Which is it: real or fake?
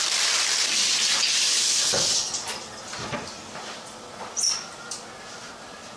fake